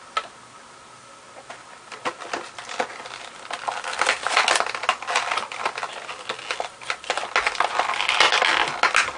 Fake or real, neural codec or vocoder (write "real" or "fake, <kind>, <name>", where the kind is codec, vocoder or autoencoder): real